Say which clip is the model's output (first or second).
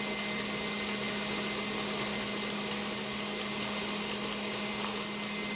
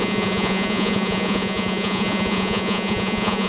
second